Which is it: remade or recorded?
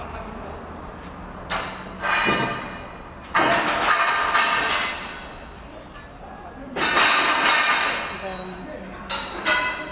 recorded